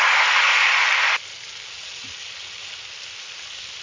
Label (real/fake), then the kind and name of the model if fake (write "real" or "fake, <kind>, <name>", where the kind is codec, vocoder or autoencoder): real